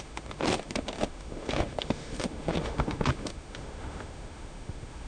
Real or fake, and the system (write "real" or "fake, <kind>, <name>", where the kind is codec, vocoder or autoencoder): fake, autoencoder, DAC-VAE